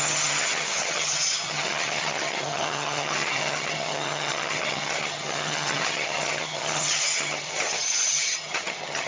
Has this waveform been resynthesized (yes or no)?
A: yes